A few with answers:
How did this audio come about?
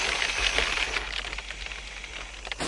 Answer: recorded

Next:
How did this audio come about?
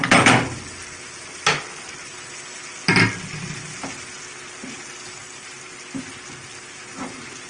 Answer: recorded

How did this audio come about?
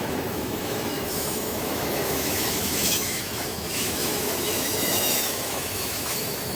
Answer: remade